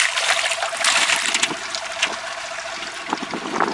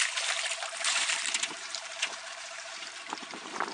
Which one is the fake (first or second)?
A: second